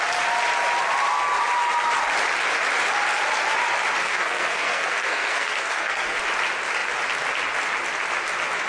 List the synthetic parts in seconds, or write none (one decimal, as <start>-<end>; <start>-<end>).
4.0-6.2